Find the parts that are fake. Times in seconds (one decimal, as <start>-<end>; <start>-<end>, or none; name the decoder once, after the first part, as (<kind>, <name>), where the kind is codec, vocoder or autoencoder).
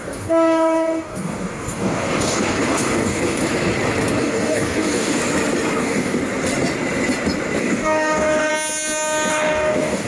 0.0-3.4 (codec, DAC); 4.2-5.2; 5.8-6.2; 7.6-8.5; 9.3-10.1